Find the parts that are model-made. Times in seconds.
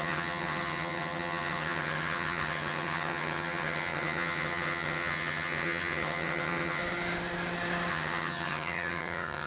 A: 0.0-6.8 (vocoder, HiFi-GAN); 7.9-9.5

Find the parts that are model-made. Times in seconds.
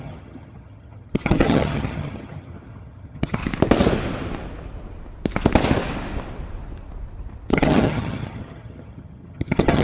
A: 0.0-3.4 (vocoder, HiFi-GAN); 7.5-9.8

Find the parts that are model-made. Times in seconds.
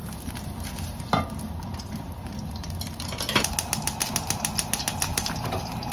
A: 0.0-3.2 (vocoder, BigVGAN v2); 5.1-5.9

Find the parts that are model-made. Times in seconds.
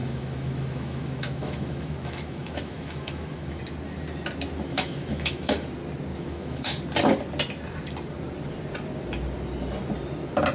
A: 0.0-3.6 (autoencoder, DAC-VAE); 4.7-5.5; 6.1-6.8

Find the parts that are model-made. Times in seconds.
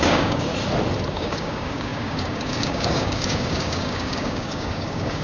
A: 0.0-0.5 (codec, DAC); 1.1-5.2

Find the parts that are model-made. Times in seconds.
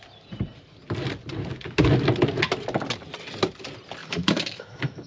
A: 4.0-5.1 (autoencoder, DAC-VAE)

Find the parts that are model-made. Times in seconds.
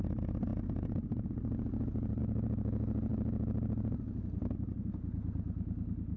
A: none